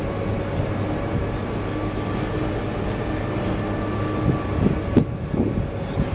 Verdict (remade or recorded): recorded